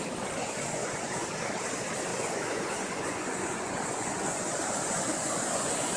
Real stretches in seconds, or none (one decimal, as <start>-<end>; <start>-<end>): 0.0-0.4; 1.1-2.1